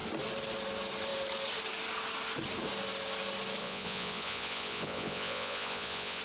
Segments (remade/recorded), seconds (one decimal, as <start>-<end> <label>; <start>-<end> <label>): 0.0-3.6 recorded; 3.6-6.2 remade